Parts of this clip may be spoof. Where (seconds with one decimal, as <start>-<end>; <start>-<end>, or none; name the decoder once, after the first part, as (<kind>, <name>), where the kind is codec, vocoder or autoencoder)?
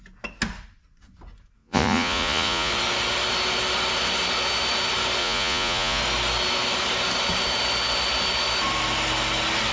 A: 1.6-2.7 (vocoder, Vocos); 5.2-6.0